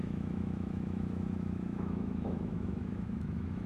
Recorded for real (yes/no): no